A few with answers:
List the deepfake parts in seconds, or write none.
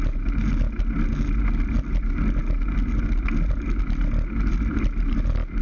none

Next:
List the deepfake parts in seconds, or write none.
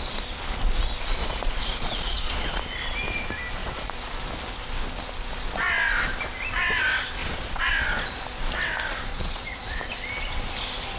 1.2-2.6 (vocoder, Vocos); 3.6-4.1; 7.2-7.7; 9.1-9.9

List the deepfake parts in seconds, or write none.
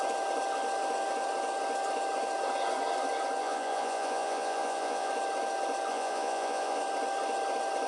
3.4-5.1 (vocoder, Vocos); 5.9-6.8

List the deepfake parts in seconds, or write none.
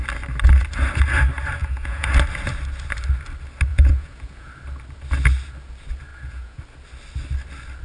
1.6-2.1 (vocoder, Vocos); 3.7-4.5; 6.1-6.6